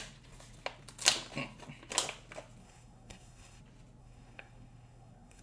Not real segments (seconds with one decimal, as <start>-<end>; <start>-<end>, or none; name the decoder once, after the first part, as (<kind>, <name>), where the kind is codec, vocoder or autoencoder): 2.6-3.6 (codec, SNAC); 4.0-5.4